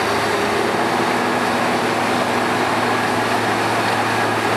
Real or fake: real